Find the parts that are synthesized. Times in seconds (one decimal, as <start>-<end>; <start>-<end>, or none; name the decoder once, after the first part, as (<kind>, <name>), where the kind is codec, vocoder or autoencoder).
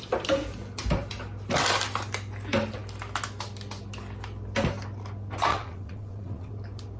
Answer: 5.5-6.5 (vocoder, WaveNeXt)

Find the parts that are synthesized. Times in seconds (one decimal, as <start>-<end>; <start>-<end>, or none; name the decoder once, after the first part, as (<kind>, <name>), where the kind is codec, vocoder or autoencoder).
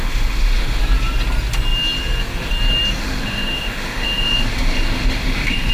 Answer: 0.0-0.8 (autoencoder, DAC-VAE); 3.0-5.7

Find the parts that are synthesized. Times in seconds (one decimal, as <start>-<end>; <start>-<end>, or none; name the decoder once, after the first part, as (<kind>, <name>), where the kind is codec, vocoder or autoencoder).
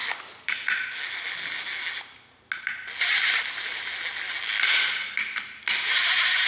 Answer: none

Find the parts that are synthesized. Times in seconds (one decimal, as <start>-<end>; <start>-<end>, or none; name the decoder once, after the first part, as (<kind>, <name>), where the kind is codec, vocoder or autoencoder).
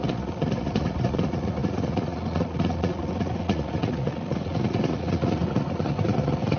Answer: 0.0-6.6 (vocoder, Vocos)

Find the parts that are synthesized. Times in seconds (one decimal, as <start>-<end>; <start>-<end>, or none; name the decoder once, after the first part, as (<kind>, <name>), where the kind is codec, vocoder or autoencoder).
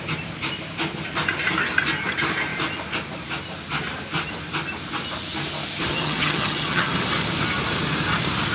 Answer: 5.9-6.9 (vocoder, HiFi-GAN)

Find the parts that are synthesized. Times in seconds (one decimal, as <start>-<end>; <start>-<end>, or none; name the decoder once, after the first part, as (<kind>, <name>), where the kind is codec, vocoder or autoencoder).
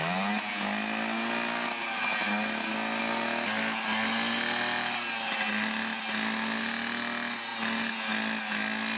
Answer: none